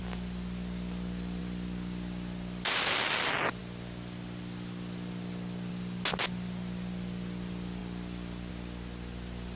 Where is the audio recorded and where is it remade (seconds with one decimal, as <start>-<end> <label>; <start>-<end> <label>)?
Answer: 0.0-9.6 recorded